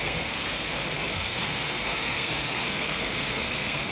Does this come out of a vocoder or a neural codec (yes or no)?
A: yes